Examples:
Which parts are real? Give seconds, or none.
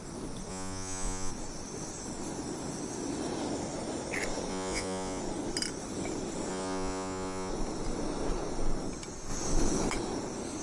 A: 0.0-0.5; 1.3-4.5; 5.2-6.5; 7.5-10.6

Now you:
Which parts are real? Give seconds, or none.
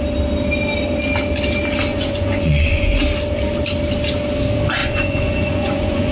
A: 0.0-1.9; 3.0-4.8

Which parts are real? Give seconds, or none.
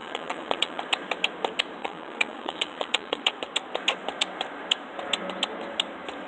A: 0.8-1.8; 3.3-6.3